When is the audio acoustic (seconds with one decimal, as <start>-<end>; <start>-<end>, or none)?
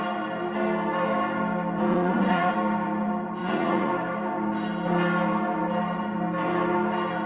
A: 0.0-1.9; 2.5-3.4; 3.9-7.3